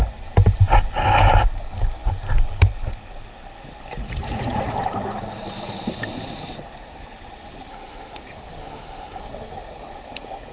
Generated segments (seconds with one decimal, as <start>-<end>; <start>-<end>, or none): 7.7-8.2; 8.6-9.2